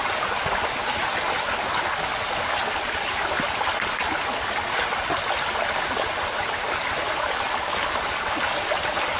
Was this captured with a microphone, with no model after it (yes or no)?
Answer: yes